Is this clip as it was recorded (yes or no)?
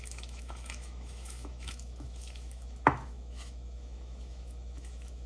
no